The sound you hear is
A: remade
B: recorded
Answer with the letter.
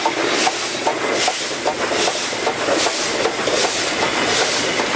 B